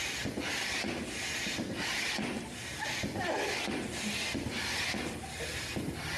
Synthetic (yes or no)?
no